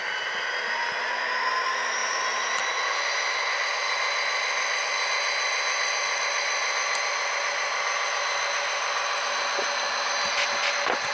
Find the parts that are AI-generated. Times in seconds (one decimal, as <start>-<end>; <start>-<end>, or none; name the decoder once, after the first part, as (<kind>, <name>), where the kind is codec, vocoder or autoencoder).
none